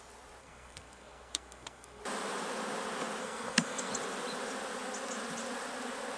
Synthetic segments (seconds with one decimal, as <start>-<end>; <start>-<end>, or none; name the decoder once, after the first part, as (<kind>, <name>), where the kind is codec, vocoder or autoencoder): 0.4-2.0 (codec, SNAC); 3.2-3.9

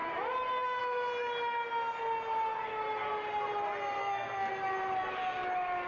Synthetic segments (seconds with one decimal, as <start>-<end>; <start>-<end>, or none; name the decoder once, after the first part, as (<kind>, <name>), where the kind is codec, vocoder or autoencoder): 4.0-4.5 (codec, SNAC)

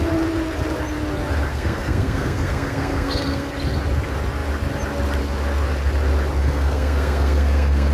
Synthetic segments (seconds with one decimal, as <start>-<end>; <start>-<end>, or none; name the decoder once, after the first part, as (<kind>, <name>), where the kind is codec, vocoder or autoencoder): 1.5-3.5 (codec, SNAC); 6.4-7.9

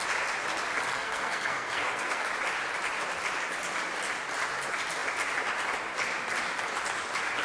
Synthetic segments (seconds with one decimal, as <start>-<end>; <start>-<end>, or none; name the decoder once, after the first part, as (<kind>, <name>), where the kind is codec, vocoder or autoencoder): 0.9-2.3 (codec, SNAC)

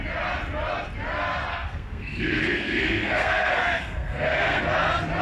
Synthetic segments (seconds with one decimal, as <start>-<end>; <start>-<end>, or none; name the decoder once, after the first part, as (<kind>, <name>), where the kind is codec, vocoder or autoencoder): 1.5-4.6 (codec, SNAC)

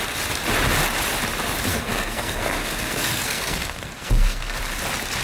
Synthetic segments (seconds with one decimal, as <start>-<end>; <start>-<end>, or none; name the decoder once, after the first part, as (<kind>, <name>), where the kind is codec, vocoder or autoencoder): 1.7-4.6 (codec, SNAC)

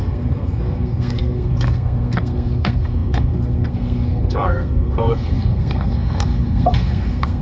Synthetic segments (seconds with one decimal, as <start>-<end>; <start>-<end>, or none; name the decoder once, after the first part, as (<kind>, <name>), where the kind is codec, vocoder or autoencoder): 0.0-7.4 (codec, SNAC)